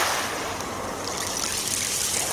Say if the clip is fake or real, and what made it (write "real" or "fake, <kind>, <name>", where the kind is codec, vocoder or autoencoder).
real